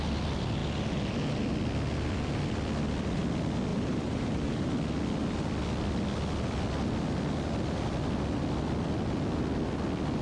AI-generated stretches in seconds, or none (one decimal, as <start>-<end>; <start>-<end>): 3.7-4.7